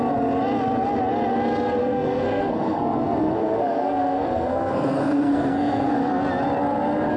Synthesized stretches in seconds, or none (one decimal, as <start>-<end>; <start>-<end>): 1.8-6.1